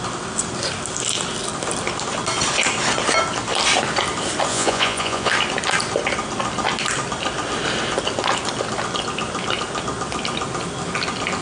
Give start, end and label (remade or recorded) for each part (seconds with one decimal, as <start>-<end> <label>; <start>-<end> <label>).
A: 0.0-4.5 recorded; 4.5-5.3 remade; 5.3-11.4 recorded